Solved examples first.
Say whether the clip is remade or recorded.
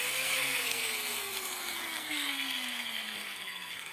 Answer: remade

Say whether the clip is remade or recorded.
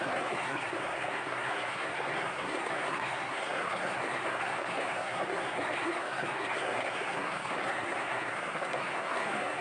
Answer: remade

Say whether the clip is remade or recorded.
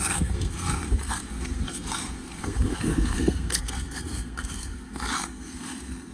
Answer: remade